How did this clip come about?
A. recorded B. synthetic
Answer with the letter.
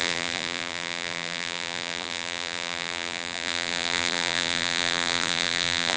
B